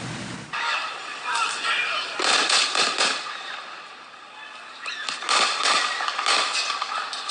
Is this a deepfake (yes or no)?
no